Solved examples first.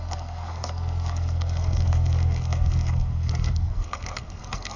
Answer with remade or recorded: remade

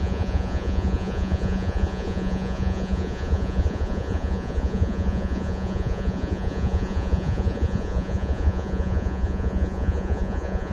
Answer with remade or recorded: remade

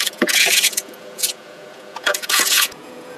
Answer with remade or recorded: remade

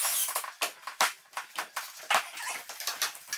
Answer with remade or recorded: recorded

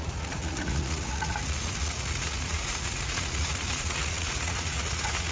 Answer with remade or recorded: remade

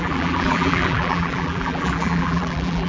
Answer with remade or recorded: remade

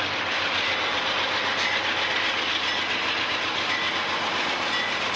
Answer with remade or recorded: recorded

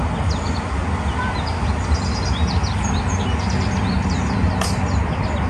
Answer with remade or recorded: recorded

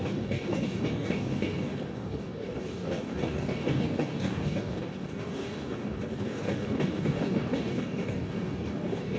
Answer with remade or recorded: remade